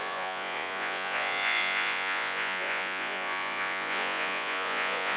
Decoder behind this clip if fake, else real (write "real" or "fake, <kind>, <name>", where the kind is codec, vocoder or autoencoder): fake, vocoder, Vocos